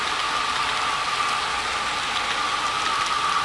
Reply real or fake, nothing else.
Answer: real